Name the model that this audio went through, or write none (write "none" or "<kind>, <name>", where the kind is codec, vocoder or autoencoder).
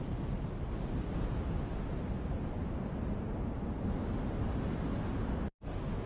none